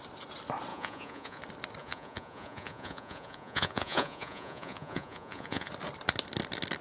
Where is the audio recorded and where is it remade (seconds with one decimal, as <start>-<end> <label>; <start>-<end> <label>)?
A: 0.0-0.7 recorded; 0.7-1.4 remade; 1.4-1.8 recorded; 1.8-5.7 remade; 5.7-6.8 recorded